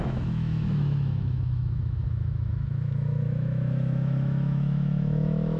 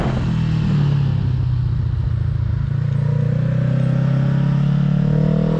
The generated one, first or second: first